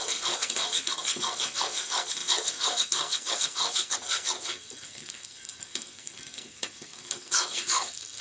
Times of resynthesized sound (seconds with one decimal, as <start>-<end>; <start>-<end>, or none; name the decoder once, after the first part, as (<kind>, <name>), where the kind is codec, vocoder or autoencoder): 0.0-8.2 (codec, SNAC)